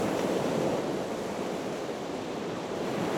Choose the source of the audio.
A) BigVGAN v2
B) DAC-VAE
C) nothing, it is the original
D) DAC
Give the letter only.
C